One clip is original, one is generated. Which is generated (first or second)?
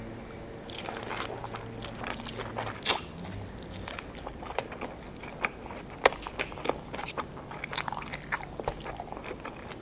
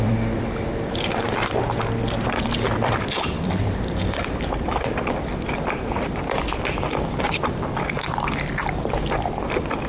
second